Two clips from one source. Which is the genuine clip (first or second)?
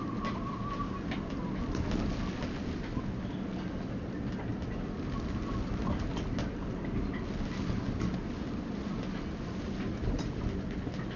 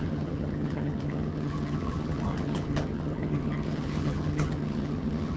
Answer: first